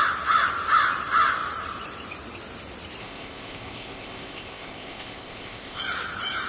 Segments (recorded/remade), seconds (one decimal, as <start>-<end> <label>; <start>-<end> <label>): 0.0-3.0 recorded; 3.0-5.8 remade; 5.8-6.5 recorded